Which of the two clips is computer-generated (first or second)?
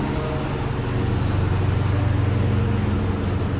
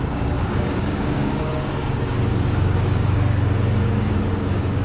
second